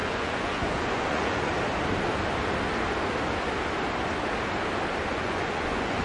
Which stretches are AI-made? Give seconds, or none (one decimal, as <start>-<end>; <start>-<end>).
0.0-1.5; 5.1-6.0